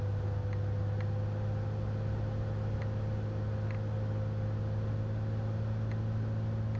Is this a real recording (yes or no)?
yes